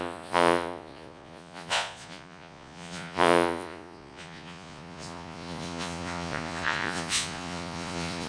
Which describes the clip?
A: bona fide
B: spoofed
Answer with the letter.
B